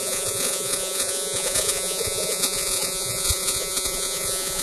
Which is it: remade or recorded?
remade